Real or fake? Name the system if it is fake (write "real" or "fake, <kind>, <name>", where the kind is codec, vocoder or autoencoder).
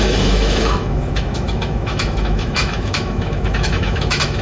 fake, autoencoder, DAC-VAE